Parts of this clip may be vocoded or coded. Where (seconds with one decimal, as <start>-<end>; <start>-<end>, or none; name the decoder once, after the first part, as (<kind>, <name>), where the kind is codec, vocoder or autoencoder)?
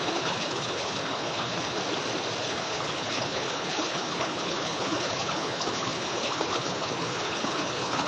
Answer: 0.0-1.8 (codec, HILCodec); 2.4-8.1